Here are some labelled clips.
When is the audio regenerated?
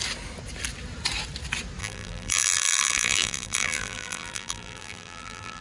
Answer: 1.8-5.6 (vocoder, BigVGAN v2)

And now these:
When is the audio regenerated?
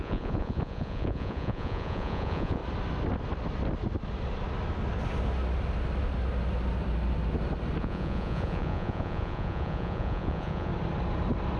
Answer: 0.0-2.6 (vocoder, Vocos); 7.8-10.7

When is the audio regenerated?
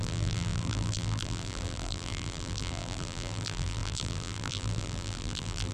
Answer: 0.0-5.7 (vocoder, BigVGAN v2)